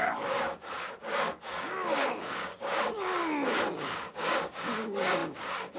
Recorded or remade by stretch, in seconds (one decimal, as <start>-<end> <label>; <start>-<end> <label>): 0.0-3.2 remade; 3.2-3.7 recorded; 3.7-5.8 remade